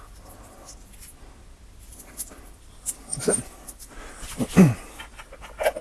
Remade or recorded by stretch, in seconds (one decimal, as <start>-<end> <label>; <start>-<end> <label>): 0.0-3.1 recorded; 3.1-4.5 remade; 4.5-5.8 recorded